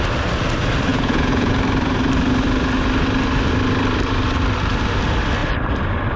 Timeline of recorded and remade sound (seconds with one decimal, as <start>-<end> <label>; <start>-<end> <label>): 0.0-0.9 recorded; 0.9-1.5 remade; 1.5-6.2 recorded